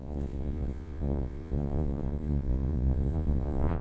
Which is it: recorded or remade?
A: remade